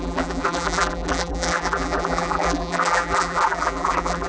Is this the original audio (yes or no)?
no